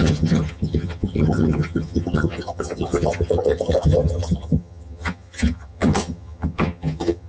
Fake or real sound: fake